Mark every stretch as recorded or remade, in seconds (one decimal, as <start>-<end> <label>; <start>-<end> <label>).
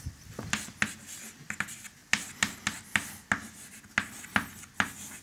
0.0-5.2 recorded